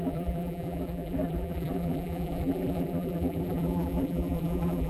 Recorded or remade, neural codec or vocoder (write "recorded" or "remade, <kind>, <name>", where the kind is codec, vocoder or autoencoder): remade, vocoder, BigVGAN v2